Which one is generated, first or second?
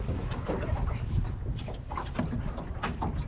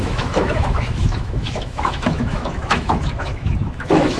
second